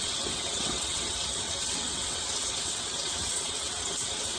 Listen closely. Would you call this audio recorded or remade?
remade